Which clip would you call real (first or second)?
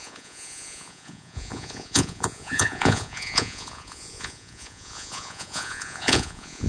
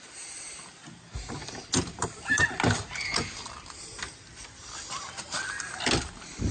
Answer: second